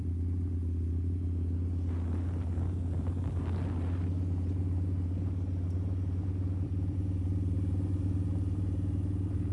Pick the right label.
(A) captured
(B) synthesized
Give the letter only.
A